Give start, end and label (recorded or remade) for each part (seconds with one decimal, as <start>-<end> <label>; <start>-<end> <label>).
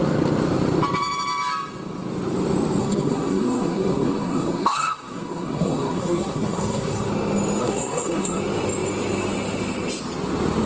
0.0-2.8 recorded; 2.8-7.1 remade; 7.1-7.6 recorded; 7.6-8.4 remade; 8.4-10.7 recorded